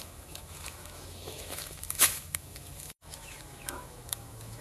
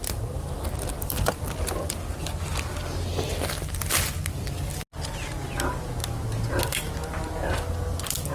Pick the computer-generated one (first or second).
first